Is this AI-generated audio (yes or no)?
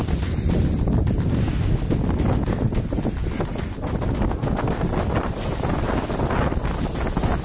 no